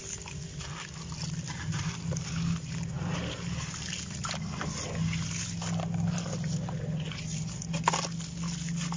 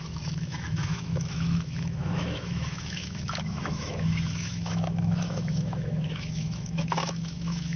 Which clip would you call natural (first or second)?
first